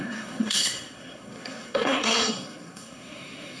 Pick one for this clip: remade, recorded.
remade